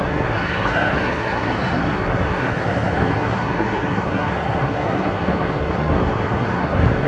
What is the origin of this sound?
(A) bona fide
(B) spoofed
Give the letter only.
B